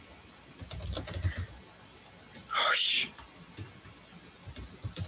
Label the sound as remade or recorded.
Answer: recorded